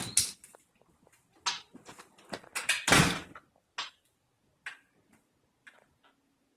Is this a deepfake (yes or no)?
no